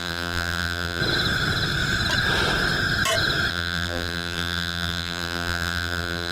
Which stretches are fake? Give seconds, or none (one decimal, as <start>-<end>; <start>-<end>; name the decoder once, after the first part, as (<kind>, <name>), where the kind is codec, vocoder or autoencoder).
0.0-1.0 (vocoder, BigVGAN v2); 3.5-6.3